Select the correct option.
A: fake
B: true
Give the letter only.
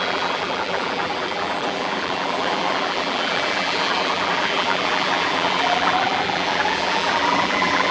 A